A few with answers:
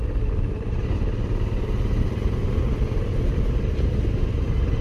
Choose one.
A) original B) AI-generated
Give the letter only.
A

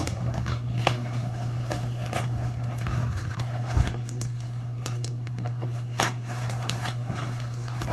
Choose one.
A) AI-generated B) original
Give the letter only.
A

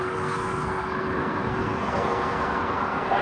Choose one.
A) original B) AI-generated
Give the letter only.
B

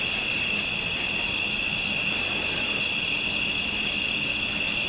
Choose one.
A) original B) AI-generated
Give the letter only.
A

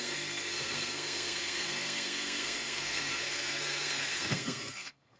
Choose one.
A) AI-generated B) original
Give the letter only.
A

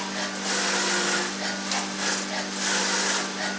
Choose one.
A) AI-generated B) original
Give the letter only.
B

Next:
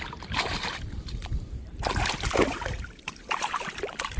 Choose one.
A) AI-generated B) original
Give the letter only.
B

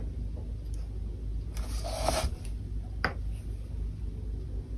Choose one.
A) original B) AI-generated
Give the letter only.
A